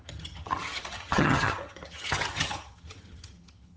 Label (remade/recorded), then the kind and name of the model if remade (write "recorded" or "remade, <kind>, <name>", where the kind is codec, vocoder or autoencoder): remade, vocoder, HiFi-GAN